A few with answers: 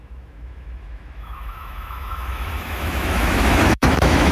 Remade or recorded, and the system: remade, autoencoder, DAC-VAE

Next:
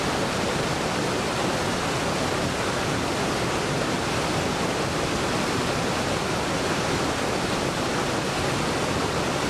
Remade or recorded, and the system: recorded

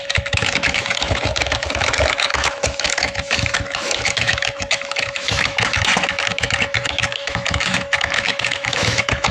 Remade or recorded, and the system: remade, autoencoder, DAC-VAE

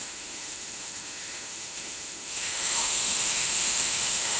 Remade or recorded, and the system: remade, autoencoder, DAC-VAE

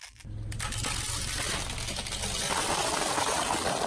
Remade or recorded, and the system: recorded